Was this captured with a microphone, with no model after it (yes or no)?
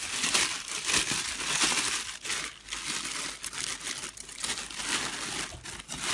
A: yes